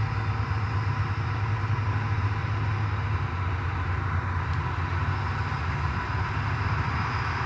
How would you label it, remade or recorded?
recorded